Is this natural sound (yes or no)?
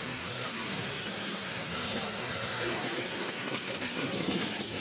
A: no